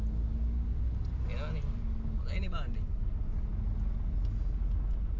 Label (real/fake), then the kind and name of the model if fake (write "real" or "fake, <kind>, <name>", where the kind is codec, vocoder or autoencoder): real